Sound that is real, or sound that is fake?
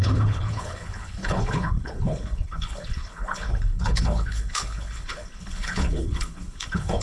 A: fake